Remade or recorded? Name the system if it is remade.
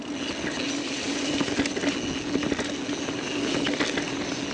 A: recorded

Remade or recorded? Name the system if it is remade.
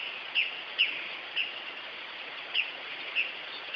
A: remade, vocoder, Vocos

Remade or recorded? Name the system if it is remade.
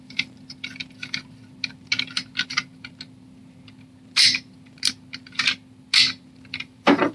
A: recorded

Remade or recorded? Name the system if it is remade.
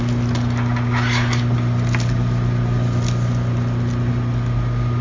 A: recorded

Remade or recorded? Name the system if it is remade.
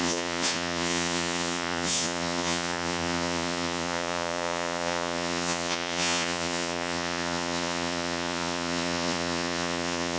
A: remade, vocoder, Vocos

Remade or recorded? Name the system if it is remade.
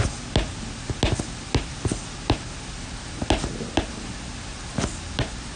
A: recorded